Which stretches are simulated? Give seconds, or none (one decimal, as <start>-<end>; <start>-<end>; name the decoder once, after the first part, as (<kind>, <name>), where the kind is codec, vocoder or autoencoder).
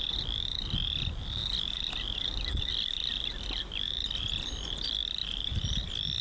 none